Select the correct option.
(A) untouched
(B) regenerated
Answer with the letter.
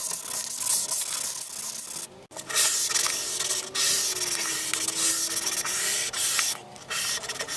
A